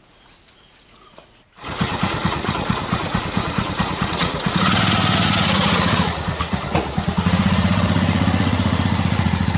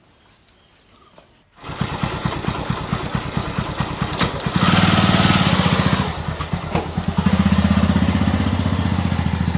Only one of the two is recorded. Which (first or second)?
second